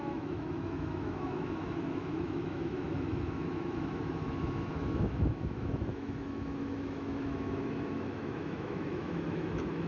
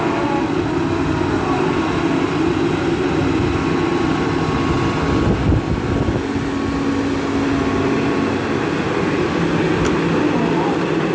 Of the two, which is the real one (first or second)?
second